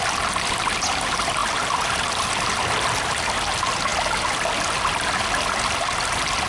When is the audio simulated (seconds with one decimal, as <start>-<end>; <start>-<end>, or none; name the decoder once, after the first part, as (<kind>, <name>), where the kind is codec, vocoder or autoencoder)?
none